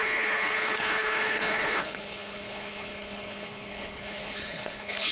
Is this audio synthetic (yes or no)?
yes